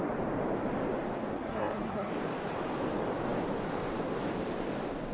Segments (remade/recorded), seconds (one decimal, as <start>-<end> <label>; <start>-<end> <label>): 0.0-1.3 recorded; 1.3-2.1 remade; 2.1-5.1 recorded

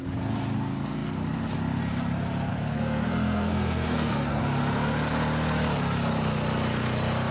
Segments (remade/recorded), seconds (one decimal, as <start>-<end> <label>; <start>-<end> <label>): 0.0-2.5 recorded; 2.5-4.4 remade; 4.4-7.3 recorded

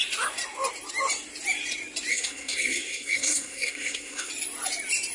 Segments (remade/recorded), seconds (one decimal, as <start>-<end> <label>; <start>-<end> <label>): 0.0-2.1 recorded; 2.1-4.3 remade; 4.3-5.1 recorded

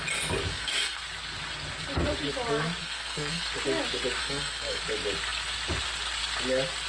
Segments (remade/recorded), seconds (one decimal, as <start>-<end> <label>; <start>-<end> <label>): 0.0-0.5 recorded; 0.5-1.0 remade; 1.0-2.8 recorded; 2.8-3.5 remade; 3.5-4.2 recorded; 4.2-4.8 remade; 4.8-6.9 recorded

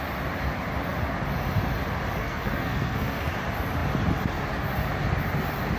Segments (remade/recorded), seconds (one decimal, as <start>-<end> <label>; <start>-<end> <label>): 0.0-2.2 recorded; 2.2-3.3 remade; 3.3-5.8 recorded

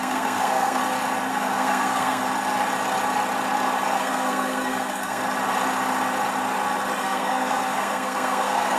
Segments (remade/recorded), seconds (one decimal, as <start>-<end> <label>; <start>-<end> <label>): 0.0-0.8 remade; 0.8-1.3 recorded; 1.3-2.2 remade; 2.2-4.0 recorded; 4.0-5.2 remade; 5.2-7.0 recorded; 7.0-8.8 remade

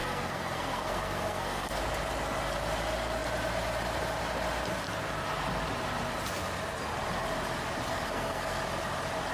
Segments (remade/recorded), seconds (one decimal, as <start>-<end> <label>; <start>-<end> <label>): 0.0-1.8 remade; 1.8-7.9 recorded; 7.9-8.6 remade; 8.6-9.3 recorded